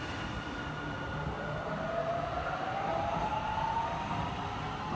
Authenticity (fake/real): real